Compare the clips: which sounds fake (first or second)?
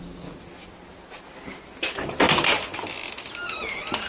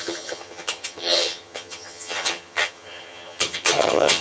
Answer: second